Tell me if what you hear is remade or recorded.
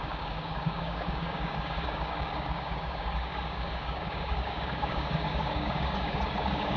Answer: remade